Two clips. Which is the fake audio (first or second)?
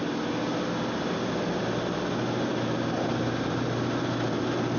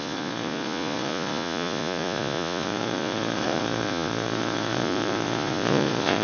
second